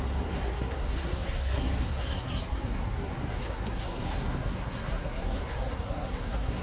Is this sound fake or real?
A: fake